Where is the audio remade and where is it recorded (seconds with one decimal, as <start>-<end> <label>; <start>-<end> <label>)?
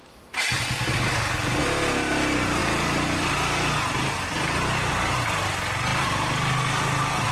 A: 0.0-1.6 remade; 1.6-7.3 recorded